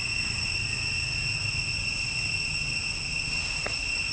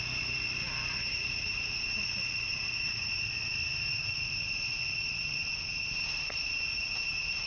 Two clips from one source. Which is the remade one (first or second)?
second